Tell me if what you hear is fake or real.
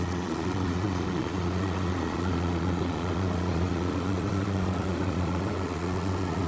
fake